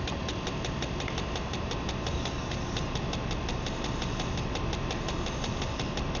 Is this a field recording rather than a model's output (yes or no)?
yes